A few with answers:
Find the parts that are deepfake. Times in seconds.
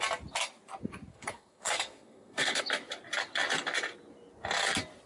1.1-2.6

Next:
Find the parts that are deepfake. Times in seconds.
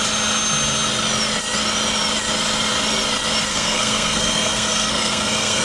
3.5-5.6